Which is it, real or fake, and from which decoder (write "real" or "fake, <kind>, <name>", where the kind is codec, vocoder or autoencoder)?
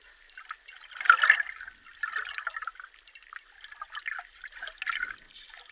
real